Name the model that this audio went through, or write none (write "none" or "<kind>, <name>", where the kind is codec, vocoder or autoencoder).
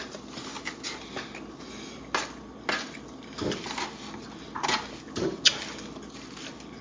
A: none